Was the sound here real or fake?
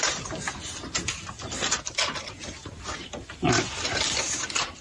real